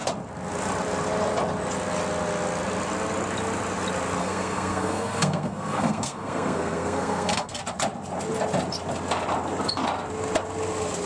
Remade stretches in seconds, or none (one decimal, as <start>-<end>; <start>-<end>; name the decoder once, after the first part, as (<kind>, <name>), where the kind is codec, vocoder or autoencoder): 4.2-7.6 (codec, SNAC)